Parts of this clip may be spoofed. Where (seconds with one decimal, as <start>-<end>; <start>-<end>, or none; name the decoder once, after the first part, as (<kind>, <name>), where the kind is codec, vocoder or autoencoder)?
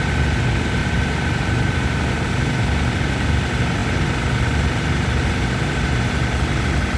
0.8-2.6 (vocoder, BigVGAN v2)